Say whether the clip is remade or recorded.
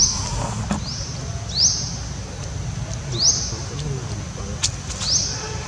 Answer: recorded